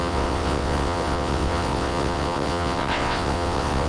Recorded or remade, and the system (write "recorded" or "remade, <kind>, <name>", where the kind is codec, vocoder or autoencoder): remade, vocoder, WaveNeXt